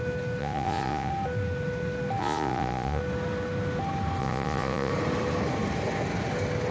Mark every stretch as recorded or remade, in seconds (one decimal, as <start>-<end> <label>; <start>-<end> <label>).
0.0-0.4 recorded; 0.4-1.1 remade; 1.1-2.2 recorded; 2.2-3.0 remade; 3.0-4.2 recorded; 4.2-4.9 remade; 4.9-6.7 recorded